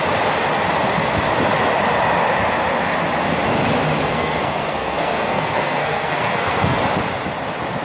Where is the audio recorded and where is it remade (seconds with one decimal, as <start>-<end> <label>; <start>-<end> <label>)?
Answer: 0.0-4.1 recorded; 4.1-6.8 remade; 6.8-7.8 recorded